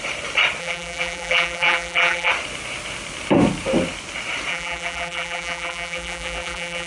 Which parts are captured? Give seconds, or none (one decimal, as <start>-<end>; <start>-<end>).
0.0-0.6; 2.3-4.5